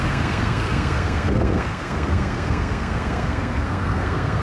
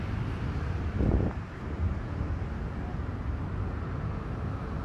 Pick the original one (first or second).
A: second